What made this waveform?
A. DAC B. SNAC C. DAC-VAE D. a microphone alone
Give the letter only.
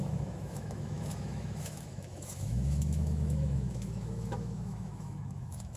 C